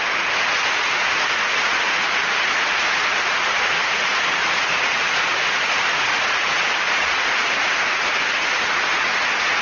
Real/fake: fake